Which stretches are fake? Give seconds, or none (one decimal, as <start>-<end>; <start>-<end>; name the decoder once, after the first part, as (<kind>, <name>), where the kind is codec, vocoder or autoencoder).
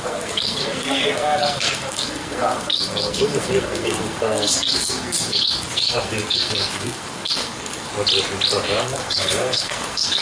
0.0-7.9 (codec, SNAC); 8.8-10.2